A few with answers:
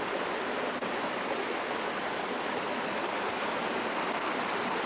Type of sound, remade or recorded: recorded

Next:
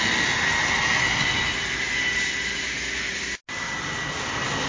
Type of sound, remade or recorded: recorded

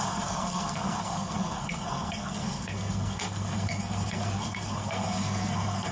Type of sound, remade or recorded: remade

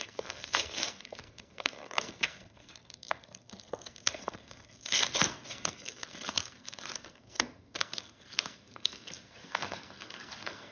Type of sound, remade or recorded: remade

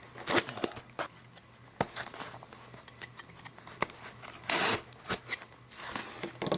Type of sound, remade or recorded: recorded